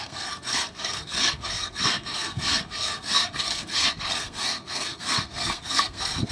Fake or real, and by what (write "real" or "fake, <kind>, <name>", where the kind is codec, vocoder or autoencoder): fake, codec, SNAC